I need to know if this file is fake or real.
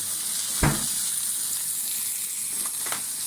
real